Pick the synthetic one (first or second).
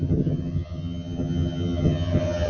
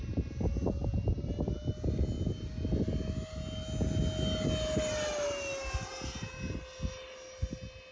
first